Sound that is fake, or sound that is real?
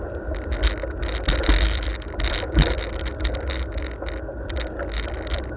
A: real